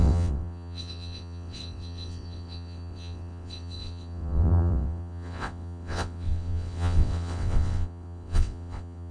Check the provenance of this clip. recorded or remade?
remade